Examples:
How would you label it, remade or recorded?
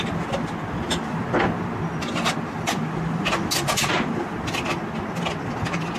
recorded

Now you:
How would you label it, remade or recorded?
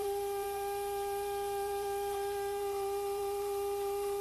remade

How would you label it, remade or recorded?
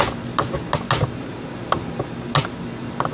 recorded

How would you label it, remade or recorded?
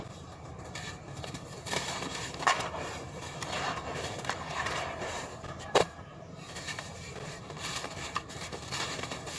remade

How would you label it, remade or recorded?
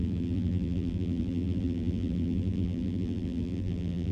remade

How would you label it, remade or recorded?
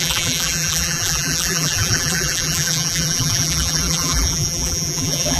remade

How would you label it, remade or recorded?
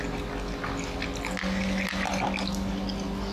recorded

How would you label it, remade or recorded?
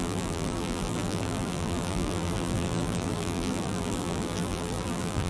remade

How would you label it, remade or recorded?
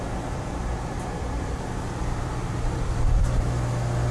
remade